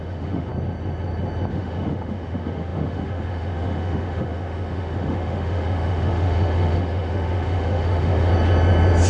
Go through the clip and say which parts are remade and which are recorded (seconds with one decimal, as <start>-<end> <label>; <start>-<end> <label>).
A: 0.0-0.5 remade; 0.5-1.5 recorded; 1.5-8.3 remade; 8.3-9.1 recorded